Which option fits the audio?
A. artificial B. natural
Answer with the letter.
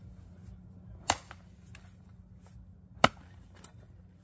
B